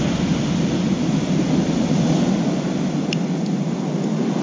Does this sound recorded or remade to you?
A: recorded